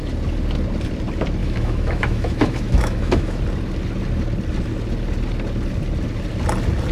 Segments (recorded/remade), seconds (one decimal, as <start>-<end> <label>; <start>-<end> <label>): 0.0-1.4 recorded; 1.4-3.4 remade; 3.4-6.9 recorded